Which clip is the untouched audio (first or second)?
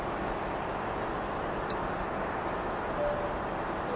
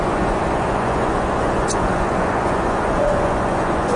first